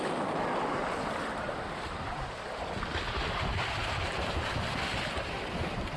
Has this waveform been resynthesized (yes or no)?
yes